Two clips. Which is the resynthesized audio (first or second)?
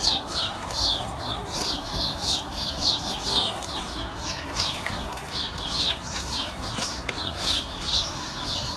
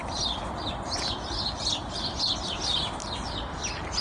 first